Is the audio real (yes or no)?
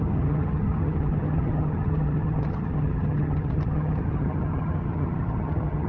no